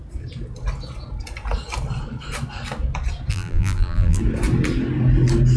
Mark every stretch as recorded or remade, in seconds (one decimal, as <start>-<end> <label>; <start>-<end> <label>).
0.0-3.3 recorded; 3.3-4.2 remade; 4.2-5.6 recorded